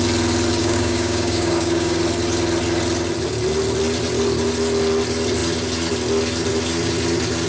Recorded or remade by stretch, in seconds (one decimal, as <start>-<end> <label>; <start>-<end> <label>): 0.0-0.6 recorded; 0.6-2.0 remade; 2.0-7.5 recorded